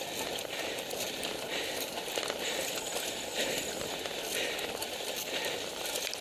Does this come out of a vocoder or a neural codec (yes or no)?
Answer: no